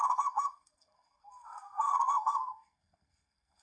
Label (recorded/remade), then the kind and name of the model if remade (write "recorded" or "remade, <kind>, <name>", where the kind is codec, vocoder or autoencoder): remade, codec, SNAC